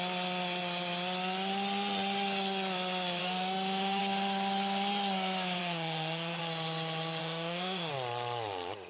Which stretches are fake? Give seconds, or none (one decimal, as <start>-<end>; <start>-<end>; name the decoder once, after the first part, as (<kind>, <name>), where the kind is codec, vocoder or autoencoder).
3.2-4.0 (autoencoder, DAC-VAE); 5.6-6.4; 7.2-7.9